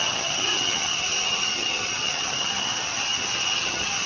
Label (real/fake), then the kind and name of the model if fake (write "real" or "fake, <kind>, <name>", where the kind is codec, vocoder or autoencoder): fake, vocoder, HiFi-GAN